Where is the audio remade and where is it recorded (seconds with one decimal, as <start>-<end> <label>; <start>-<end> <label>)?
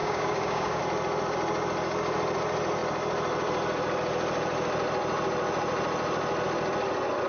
0.0-0.8 remade; 0.8-7.3 recorded